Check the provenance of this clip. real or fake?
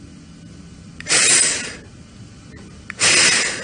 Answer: real